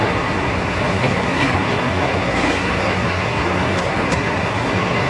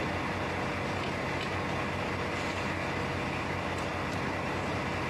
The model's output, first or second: first